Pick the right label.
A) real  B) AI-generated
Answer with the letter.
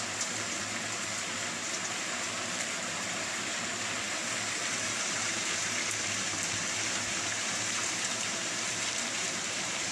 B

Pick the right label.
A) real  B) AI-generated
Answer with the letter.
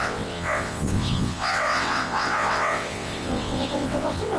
B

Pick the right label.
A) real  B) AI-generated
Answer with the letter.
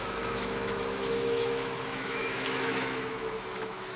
B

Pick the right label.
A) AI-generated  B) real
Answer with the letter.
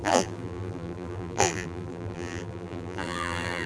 A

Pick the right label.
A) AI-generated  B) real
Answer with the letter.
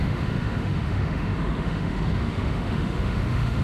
A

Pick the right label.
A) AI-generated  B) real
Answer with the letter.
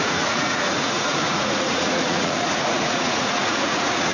A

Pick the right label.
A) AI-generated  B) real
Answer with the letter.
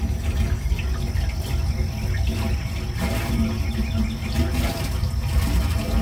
B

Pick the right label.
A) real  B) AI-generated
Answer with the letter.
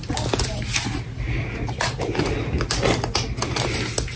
A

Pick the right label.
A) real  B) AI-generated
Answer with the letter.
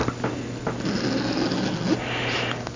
A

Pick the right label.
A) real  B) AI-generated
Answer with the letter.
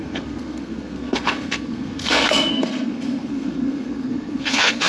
B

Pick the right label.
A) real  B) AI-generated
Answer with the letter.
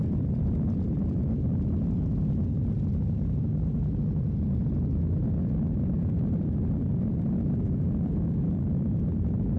A